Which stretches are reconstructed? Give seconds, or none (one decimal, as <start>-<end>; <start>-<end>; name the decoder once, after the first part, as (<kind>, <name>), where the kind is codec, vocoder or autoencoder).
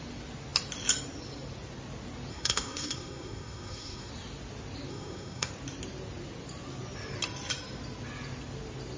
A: 2.3-4.1 (codec, SNAC); 4.9-5.5